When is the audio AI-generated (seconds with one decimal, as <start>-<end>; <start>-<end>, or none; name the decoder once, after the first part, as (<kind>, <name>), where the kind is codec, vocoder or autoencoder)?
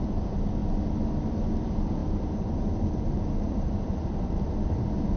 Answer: none